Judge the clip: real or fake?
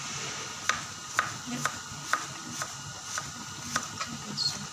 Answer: real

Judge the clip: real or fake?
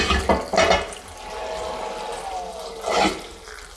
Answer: real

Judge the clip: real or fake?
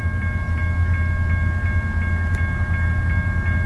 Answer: real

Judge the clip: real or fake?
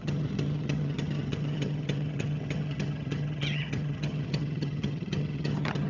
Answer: fake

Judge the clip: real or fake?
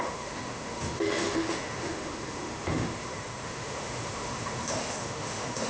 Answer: fake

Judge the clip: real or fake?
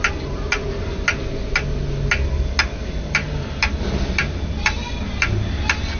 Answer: real